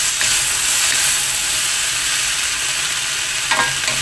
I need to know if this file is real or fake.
real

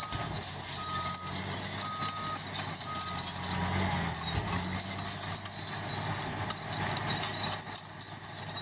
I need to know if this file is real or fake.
real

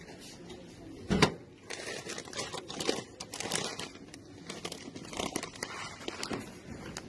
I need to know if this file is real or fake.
real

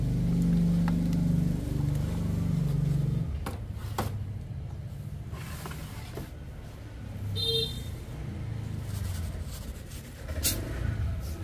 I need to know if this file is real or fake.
real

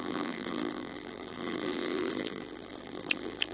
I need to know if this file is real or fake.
fake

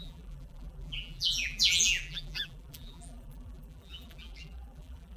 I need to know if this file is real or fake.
fake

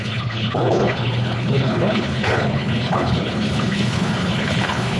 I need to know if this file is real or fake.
fake